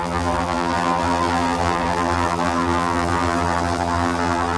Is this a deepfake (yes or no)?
yes